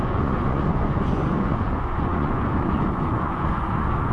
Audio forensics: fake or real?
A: fake